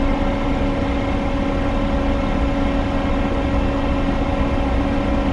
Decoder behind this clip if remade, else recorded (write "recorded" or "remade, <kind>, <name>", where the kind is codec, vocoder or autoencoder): recorded